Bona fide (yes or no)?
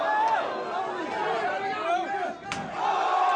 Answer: yes